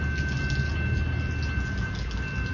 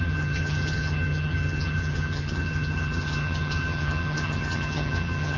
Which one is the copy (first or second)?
second